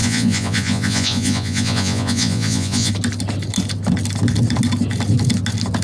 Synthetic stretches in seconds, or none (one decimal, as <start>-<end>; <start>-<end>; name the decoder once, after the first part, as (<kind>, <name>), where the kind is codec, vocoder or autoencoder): 0.0-2.9 (vocoder, Vocos)